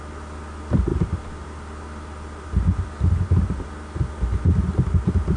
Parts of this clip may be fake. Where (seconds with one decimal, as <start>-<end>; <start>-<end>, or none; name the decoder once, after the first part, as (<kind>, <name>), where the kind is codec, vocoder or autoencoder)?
none